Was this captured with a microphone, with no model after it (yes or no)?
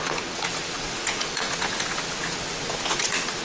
no